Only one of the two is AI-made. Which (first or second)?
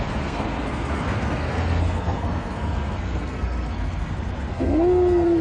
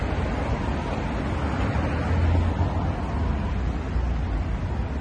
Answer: first